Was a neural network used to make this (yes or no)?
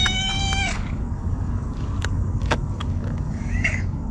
yes